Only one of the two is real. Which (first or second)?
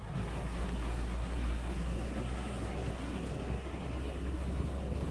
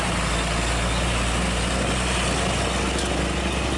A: second